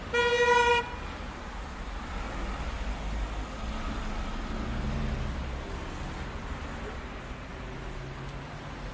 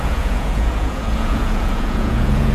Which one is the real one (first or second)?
first